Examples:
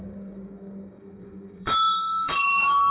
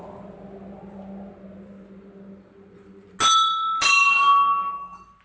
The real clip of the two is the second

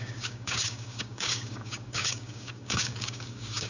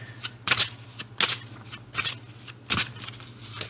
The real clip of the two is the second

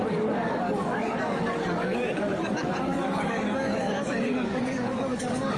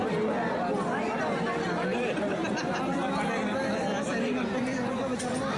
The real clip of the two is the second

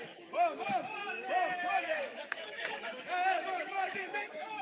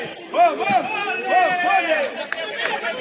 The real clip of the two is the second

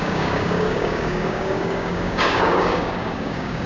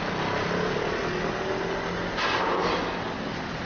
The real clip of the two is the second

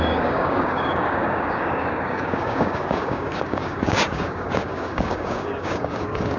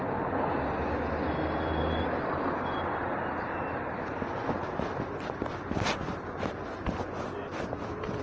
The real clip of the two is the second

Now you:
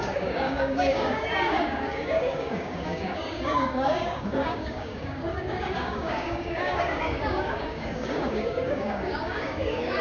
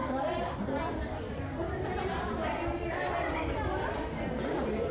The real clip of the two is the second